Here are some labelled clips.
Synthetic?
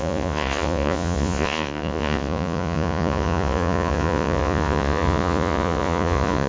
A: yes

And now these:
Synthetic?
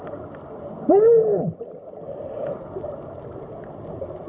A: no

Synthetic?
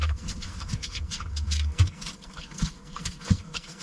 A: yes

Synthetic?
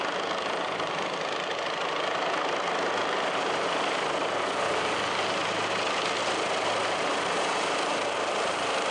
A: no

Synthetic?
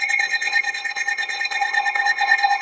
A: yes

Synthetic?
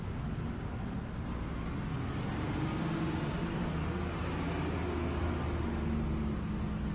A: no